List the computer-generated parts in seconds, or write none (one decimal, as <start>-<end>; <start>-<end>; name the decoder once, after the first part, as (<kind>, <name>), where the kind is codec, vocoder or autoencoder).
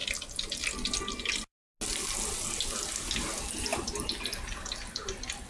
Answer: none